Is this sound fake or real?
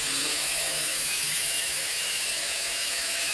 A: fake